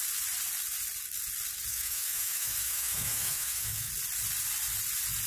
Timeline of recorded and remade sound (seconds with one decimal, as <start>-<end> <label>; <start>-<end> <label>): 0.0-1.7 recorded; 1.7-3.9 remade; 3.9-5.3 recorded